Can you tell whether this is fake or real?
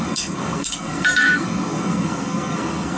fake